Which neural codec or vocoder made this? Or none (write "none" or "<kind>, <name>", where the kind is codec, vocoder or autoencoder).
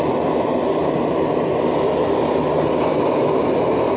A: none